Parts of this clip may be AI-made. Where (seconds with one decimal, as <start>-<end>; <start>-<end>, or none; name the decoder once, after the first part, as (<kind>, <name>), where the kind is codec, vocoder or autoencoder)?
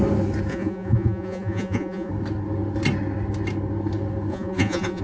0.5-2.1 (vocoder, Vocos); 4.3-5.0